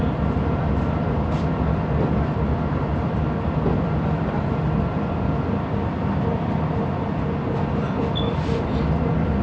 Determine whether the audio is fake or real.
fake